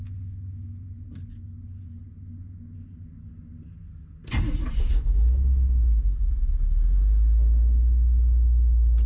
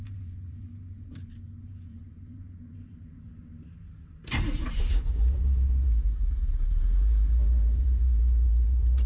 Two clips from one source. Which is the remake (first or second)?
second